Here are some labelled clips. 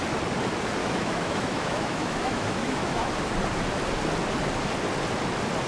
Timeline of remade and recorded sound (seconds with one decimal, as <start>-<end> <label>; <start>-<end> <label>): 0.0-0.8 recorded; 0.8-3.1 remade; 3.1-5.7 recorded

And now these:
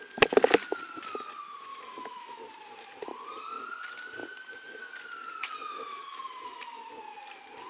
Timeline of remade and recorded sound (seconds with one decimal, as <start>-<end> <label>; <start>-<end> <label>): 0.0-1.7 recorded; 1.7-2.4 remade; 2.4-5.9 recorded; 5.9-6.9 remade; 6.9-7.7 recorded

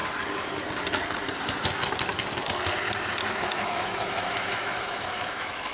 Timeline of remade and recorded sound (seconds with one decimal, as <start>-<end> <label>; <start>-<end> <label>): 0.0-3.3 recorded; 3.3-5.7 remade